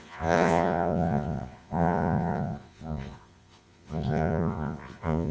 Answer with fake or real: fake